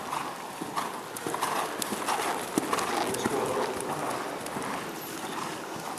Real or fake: real